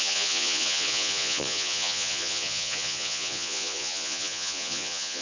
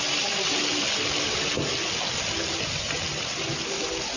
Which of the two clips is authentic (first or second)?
second